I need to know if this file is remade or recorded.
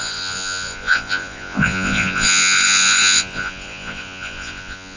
remade